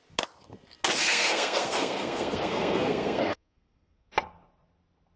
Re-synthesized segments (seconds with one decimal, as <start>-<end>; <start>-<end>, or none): 1.0-4.1